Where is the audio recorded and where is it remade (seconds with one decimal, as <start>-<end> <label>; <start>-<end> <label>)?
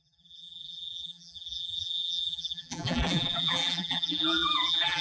0.0-5.0 remade